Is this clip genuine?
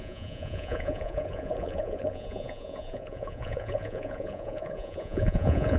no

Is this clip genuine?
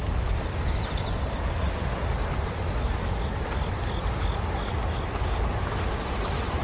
yes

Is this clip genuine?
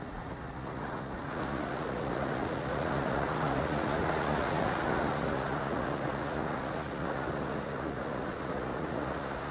no